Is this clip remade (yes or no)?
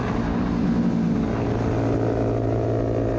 no